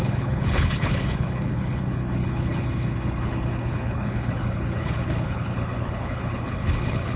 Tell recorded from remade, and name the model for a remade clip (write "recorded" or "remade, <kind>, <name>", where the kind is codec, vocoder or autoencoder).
remade, codec, HILCodec